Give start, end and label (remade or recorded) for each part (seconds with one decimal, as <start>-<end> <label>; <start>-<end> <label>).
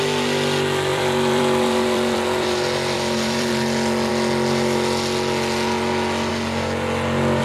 0.0-0.9 recorded; 0.9-3.5 remade; 3.5-7.4 recorded